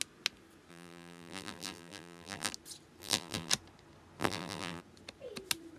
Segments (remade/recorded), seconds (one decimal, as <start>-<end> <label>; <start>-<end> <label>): 0.0-0.7 recorded; 0.7-2.5 remade; 2.5-3.0 recorded; 3.0-3.5 remade; 3.5-4.2 recorded; 4.2-4.8 remade; 4.8-5.8 recorded